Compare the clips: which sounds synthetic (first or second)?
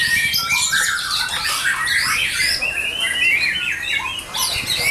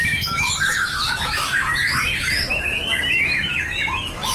second